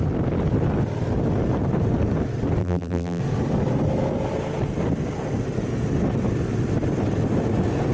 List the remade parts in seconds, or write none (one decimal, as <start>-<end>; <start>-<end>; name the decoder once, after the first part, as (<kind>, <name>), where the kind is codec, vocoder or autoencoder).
2.6-3.2 (vocoder, BigVGAN v2)